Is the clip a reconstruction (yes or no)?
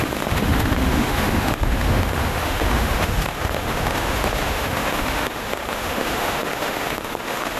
yes